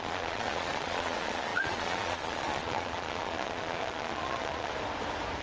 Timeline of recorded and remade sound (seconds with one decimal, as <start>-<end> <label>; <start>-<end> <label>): 0.0-4.7 remade; 4.7-5.4 recorded